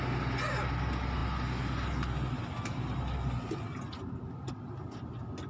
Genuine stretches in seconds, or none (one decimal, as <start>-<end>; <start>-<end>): 0.0-5.5